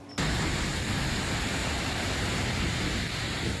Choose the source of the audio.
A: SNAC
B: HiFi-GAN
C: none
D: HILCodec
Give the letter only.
C